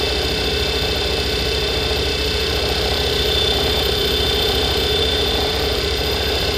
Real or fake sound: fake